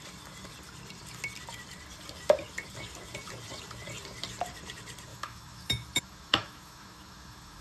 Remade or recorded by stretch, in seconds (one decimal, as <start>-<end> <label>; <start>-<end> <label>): 0.0-5.1 recorded; 5.1-7.6 remade